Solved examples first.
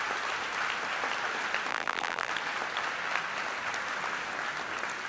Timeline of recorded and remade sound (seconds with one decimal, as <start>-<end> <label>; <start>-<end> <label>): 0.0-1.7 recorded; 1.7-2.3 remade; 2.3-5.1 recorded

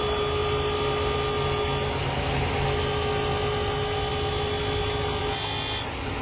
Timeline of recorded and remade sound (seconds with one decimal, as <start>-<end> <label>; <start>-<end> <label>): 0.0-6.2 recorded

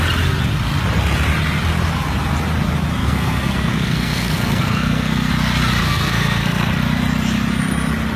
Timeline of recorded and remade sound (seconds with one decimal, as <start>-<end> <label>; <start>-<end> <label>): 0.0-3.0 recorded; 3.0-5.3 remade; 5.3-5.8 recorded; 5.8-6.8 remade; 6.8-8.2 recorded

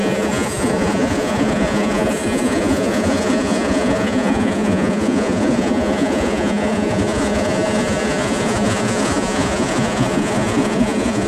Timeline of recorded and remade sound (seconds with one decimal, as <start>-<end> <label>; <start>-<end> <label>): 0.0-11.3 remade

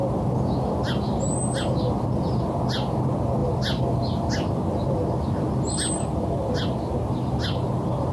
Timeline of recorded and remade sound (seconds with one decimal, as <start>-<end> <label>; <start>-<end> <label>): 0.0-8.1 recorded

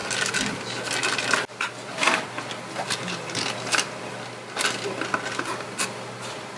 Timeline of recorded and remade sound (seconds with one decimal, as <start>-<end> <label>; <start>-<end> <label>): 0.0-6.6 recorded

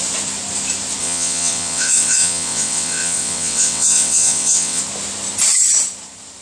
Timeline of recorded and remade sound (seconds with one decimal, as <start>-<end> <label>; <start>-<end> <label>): 0.0-1.0 recorded; 1.0-4.8 remade; 4.8-6.4 recorded